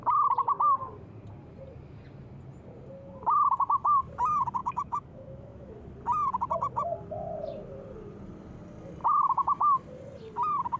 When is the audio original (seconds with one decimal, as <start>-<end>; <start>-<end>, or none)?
0.0-4.6; 5.7-10.8